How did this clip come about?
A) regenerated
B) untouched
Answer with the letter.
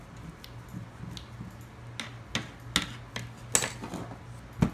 B